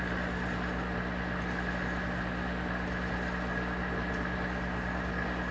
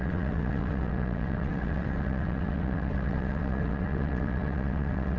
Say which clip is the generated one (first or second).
second